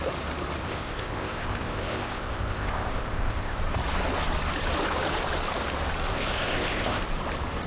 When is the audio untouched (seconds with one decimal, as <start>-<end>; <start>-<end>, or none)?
0.0-0.6; 3.6-6.1; 7.0-7.7